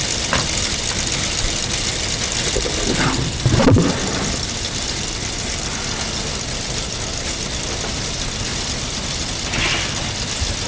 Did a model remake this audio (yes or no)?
no